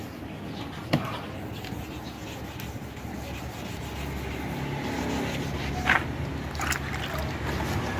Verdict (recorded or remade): recorded